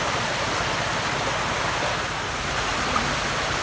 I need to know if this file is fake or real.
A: real